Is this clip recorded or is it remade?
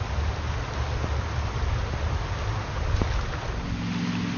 recorded